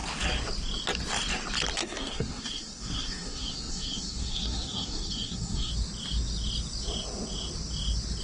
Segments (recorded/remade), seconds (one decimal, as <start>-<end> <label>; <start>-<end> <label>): 0.0-1.8 recorded; 1.8-5.7 remade; 5.7-8.2 recorded